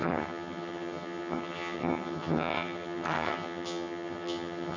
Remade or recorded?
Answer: remade